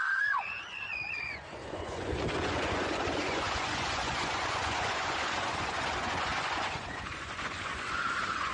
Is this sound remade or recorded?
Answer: remade